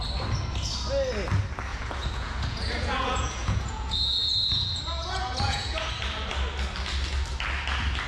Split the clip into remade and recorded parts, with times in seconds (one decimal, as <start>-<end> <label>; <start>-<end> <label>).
0.0-1.7 recorded; 1.7-5.9 remade; 5.9-8.1 recorded